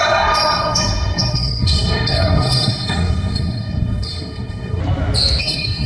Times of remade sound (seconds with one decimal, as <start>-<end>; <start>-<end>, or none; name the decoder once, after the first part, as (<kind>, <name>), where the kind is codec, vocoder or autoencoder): 0.0-4.8 (codec, SNAC); 5.4-5.9